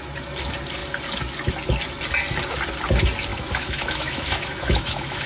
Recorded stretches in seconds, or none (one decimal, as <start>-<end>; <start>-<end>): 0.0-3.3